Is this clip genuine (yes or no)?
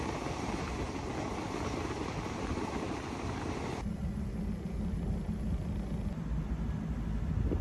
yes